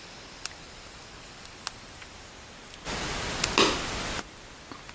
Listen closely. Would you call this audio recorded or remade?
recorded